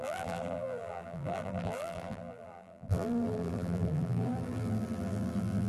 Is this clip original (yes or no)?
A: no